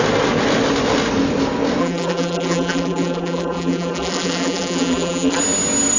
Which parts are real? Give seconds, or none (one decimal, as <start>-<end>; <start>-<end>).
0.0-1.8; 5.4-6.0